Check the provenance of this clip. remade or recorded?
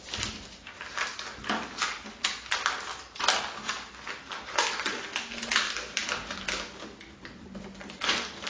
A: recorded